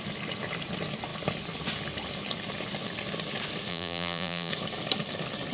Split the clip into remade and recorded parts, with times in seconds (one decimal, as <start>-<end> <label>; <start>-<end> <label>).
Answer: 0.0-3.7 recorded; 3.7-4.5 remade; 4.5-5.5 recorded